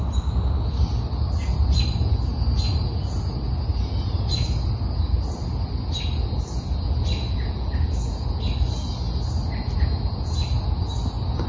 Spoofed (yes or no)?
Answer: no